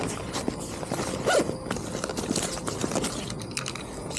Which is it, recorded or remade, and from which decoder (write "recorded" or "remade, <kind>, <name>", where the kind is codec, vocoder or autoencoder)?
recorded